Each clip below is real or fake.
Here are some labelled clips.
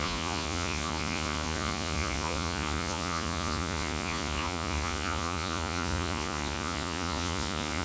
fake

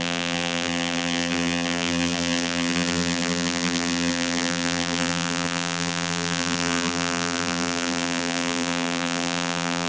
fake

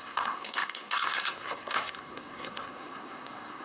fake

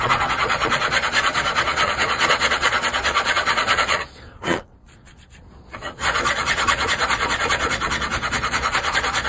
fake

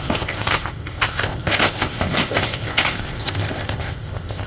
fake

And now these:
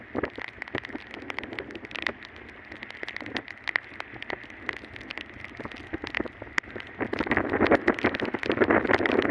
real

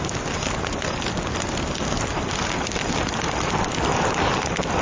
real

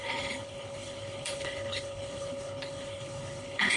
fake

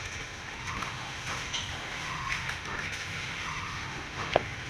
fake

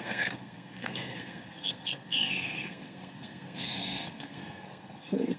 fake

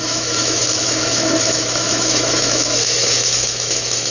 fake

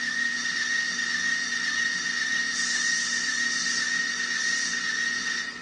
real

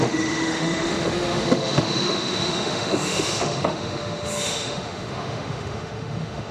fake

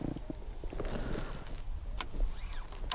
real